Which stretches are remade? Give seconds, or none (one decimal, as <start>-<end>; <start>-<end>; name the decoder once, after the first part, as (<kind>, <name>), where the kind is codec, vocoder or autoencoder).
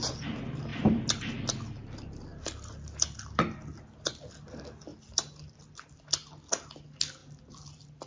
0.7-1.3 (vocoder, BigVGAN v2); 4.9-5.6